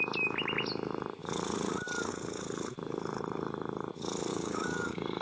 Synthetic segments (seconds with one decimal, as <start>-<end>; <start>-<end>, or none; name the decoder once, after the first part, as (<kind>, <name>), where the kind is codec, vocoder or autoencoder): 4.3-5.2 (codec, DAC)